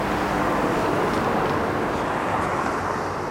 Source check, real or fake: real